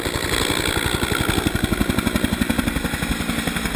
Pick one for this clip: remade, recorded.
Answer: recorded